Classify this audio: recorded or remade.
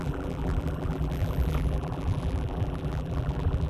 remade